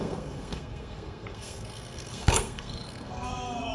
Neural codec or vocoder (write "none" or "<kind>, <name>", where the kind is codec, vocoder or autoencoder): codec, SNAC